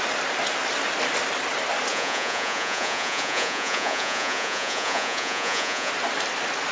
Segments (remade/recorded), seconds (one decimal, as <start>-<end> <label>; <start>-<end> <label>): 0.0-1.9 recorded; 1.9-5.9 remade; 5.9-6.7 recorded